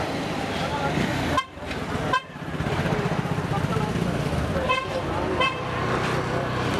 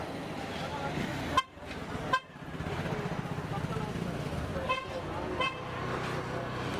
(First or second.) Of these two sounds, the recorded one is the second